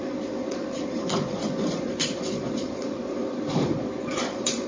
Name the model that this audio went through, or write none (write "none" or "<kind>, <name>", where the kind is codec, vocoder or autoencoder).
vocoder, Vocos